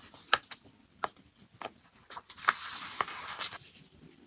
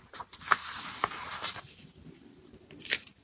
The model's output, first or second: second